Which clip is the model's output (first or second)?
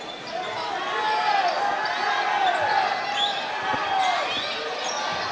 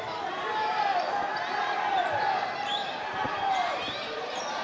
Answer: second